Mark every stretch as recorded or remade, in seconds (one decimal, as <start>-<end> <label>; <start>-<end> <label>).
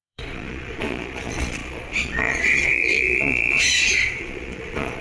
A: 0.0-5.0 remade